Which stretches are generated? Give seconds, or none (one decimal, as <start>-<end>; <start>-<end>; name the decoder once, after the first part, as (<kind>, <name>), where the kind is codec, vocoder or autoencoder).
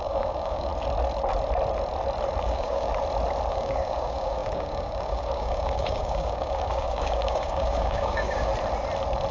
0.0-0.7 (codec, DAC); 2.4-2.9; 3.5-8.5